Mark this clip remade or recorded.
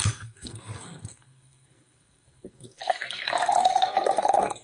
remade